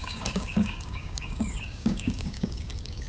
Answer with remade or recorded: remade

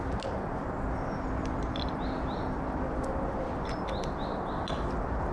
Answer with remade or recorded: recorded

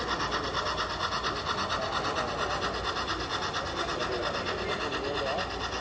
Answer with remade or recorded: recorded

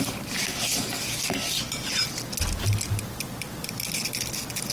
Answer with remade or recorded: recorded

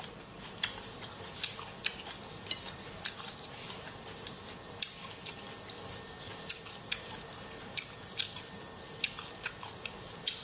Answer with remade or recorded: remade